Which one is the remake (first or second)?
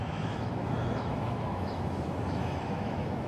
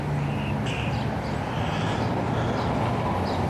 first